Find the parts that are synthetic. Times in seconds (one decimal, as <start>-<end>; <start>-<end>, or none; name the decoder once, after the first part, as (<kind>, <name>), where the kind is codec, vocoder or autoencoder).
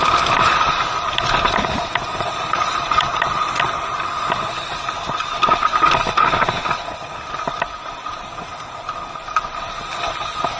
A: 2.1-3.6 (vocoder, BigVGAN v2)